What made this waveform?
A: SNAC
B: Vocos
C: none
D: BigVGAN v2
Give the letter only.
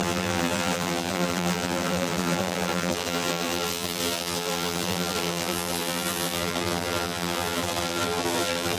D